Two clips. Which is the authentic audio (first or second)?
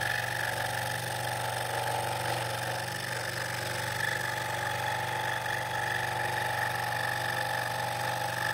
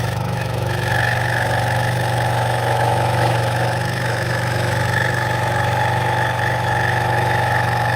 first